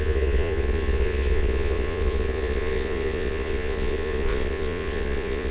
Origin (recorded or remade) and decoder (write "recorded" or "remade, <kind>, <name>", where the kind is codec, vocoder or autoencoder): remade, vocoder, Vocos